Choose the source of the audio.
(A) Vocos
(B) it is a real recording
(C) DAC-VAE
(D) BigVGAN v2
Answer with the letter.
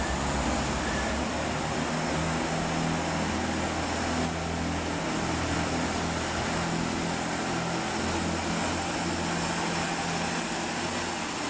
B